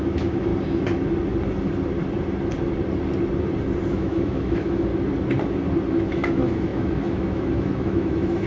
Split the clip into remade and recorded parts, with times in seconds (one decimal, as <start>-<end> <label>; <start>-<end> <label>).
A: 0.0-0.5 remade; 0.5-3.9 recorded; 3.9-4.9 remade; 4.9-5.9 recorded; 5.9-8.5 remade